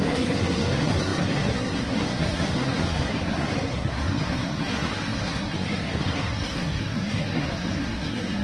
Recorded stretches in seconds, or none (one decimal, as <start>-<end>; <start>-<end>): none